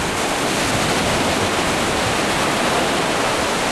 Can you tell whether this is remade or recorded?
recorded